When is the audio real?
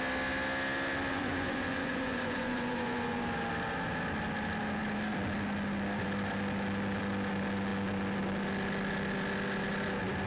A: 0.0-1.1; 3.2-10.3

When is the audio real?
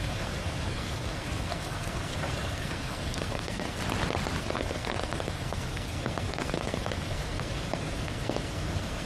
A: 3.8-4.4